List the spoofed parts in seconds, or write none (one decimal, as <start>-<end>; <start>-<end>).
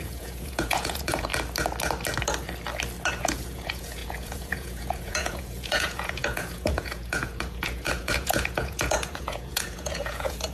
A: 0.0-1.3; 3.1-10.5